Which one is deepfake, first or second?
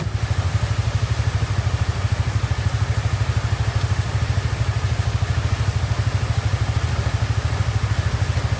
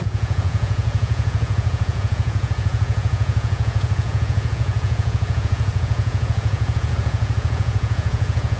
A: second